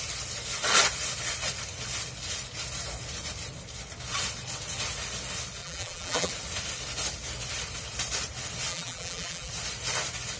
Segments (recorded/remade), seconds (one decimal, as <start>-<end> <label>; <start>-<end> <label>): 0.0-5.6 recorded; 5.6-6.3 remade; 6.3-8.7 recorded; 8.7-9.5 remade; 9.5-10.4 recorded

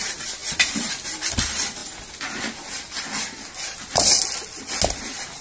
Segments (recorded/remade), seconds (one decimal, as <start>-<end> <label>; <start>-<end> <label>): 0.0-1.8 remade; 1.8-5.0 recorded; 5.0-5.4 remade

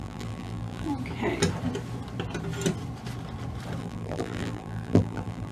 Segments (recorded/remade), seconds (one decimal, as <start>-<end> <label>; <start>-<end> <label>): 0.0-0.9 remade; 0.9-3.8 recorded; 3.8-5.5 remade

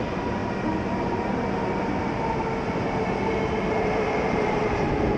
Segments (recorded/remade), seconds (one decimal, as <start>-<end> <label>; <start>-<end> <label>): 0.0-0.4 remade; 0.4-3.5 recorded; 3.5-5.2 remade